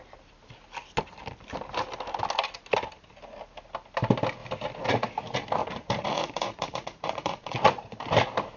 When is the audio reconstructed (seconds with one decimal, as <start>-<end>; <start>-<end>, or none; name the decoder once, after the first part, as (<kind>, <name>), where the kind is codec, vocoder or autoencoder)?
5.6-8.0 (vocoder, Vocos)